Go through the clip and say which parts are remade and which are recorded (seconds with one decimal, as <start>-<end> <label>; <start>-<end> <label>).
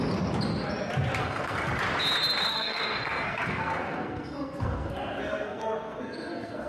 0.0-1.2 recorded; 1.2-1.8 remade; 1.8-2.5 recorded; 2.5-6.7 remade